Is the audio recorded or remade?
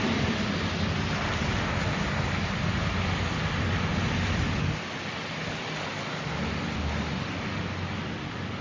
recorded